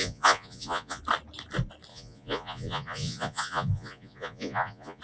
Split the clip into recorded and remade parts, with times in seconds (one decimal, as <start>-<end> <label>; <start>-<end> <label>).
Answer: 0.0-1.0 remade; 1.0-1.9 recorded; 1.9-5.0 remade